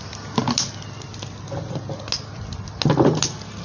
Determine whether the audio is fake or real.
real